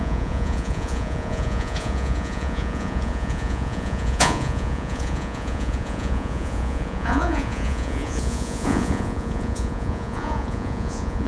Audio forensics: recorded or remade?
remade